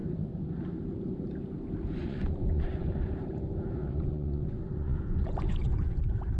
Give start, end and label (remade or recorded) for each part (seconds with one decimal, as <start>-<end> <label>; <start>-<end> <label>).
0.0-2.0 recorded; 2.0-3.2 remade; 3.2-3.8 recorded; 3.8-6.0 remade; 6.0-6.4 recorded